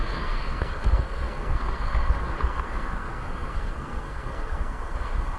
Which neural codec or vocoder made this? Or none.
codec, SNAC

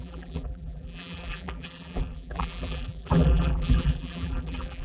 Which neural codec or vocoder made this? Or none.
vocoder, BigVGAN v2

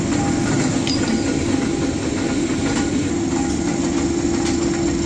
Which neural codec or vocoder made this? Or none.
none